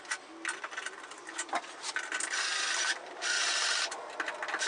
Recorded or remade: recorded